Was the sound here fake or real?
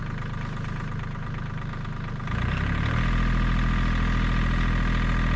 real